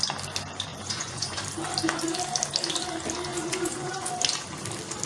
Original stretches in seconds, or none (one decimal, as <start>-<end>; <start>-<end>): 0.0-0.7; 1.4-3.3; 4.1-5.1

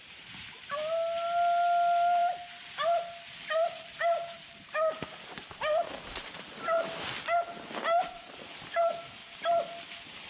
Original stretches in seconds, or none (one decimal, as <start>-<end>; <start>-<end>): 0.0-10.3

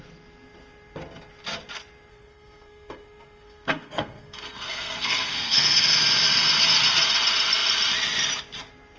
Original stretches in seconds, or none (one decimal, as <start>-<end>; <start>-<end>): 0.0-2.1; 6.0-9.0

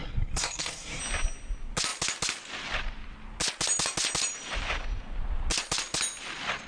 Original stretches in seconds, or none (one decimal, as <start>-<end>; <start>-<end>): 1.0-6.7

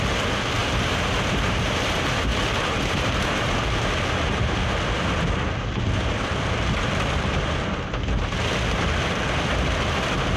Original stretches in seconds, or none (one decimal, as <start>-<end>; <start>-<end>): 0.0-0.6; 3.5-10.4